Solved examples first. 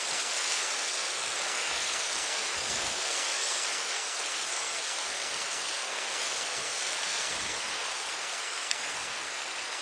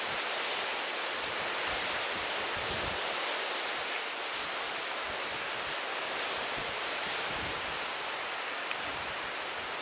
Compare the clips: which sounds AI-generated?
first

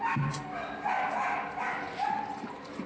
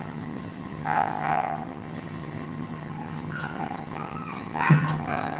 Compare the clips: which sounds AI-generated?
second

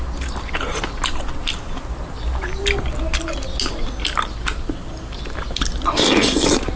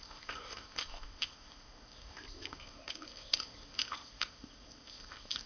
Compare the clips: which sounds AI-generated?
second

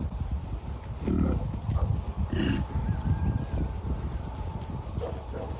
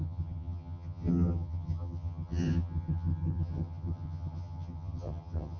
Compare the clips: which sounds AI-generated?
second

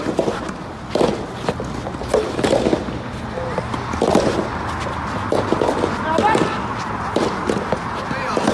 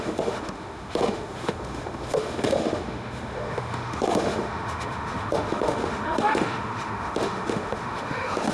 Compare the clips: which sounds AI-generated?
second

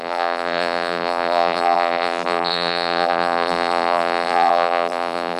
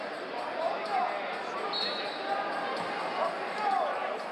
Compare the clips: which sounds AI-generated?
first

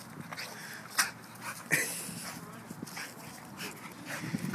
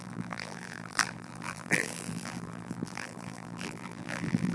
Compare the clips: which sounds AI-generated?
second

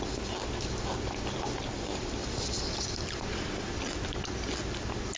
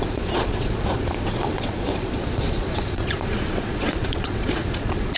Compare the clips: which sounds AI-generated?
second